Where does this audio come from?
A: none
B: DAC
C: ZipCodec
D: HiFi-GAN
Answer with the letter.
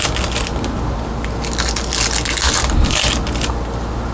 A